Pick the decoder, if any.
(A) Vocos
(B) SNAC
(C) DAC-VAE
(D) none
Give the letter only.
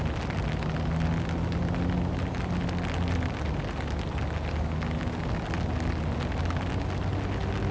D